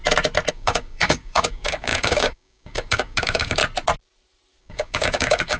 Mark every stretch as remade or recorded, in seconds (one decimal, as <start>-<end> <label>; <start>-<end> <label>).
0.0-0.5 recorded; 0.5-3.6 remade; 3.6-4.6 recorded; 4.6-5.6 remade